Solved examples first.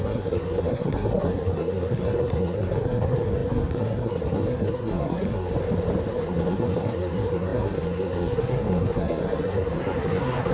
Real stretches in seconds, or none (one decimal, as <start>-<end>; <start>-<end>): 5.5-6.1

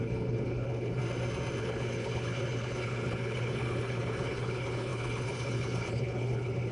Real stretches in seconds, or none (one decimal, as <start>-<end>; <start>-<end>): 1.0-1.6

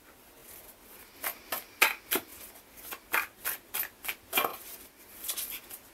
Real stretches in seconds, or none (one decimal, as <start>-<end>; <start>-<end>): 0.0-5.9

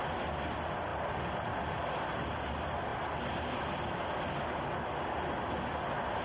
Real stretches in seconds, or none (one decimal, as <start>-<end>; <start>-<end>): 0.0-6.2